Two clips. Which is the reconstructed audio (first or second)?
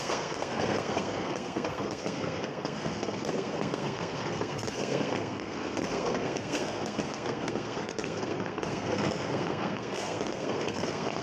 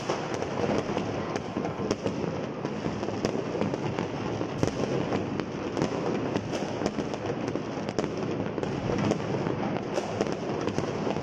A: first